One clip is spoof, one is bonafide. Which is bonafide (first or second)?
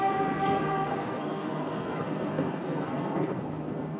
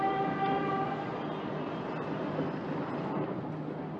second